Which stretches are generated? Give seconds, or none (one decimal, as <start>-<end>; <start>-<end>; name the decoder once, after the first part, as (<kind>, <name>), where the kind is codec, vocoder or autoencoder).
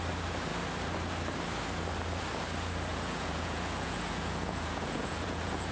2.9-5.7 (vocoder, Vocos)